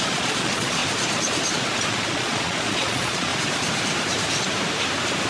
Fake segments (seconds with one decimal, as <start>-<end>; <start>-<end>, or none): 0.0-0.8; 1.9-3.3

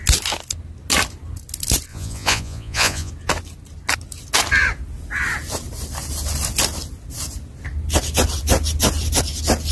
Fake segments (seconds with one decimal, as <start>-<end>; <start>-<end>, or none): 1.9-3.1

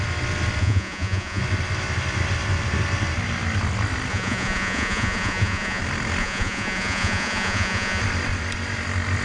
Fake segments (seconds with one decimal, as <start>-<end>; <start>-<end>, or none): 0.6-1.4; 4.1-5.8; 6.2-8.0

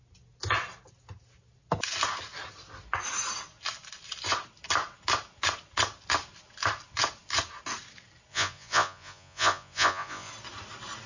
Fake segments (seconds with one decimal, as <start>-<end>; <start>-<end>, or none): 8.3-10.3

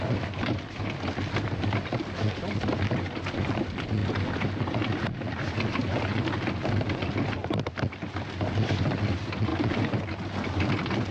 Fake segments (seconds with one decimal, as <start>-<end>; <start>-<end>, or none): none

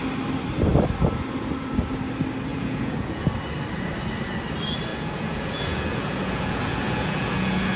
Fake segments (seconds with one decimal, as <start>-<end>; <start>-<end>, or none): 2.5-3.3; 4.9-7.8

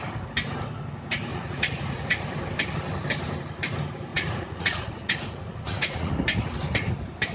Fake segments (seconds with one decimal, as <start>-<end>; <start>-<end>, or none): 1.3-2.2; 4.1-6.1

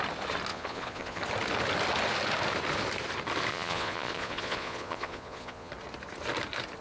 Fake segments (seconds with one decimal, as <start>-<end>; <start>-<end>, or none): 0.5-1.2; 3.5-5.7